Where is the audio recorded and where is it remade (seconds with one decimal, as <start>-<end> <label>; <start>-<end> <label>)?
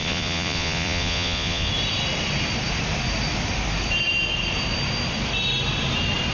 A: 0.0-1.7 remade; 1.7-6.3 recorded